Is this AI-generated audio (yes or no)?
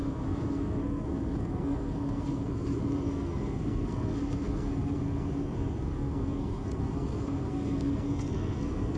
yes